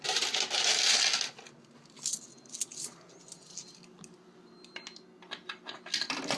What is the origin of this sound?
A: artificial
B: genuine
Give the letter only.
B